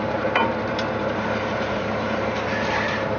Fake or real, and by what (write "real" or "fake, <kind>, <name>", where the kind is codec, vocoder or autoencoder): fake, vocoder, BigVGAN v2